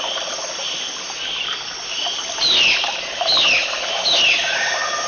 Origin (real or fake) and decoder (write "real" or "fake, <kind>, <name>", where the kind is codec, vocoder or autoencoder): real